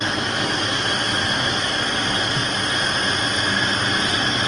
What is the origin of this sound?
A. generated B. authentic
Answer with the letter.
B